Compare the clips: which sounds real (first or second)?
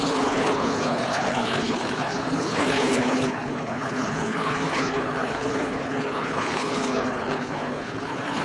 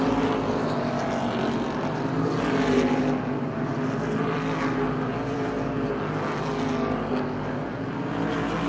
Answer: second